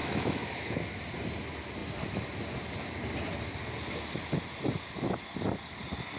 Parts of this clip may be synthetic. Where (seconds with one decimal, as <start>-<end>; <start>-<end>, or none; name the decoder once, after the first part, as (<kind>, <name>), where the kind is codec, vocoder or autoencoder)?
0.0-0.7 (autoencoder, DAC-VAE)